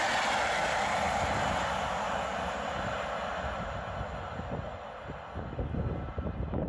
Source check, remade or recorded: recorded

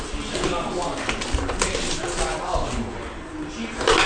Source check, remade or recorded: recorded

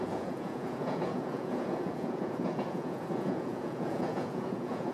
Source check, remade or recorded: remade